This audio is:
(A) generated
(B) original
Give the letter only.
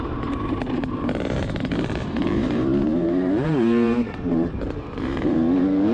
A